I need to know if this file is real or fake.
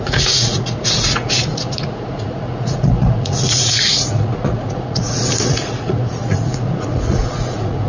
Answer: fake